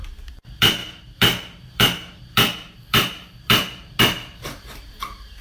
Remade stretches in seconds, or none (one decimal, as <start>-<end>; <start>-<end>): 0.0-5.4